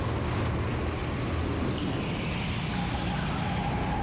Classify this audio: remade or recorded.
recorded